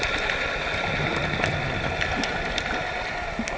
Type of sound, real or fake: real